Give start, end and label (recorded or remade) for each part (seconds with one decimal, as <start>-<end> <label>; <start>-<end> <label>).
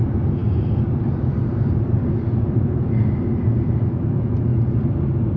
0.0-5.4 recorded